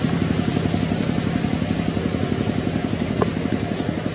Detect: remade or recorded recorded